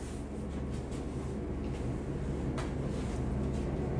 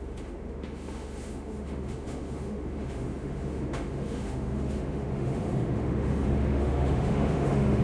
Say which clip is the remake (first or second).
second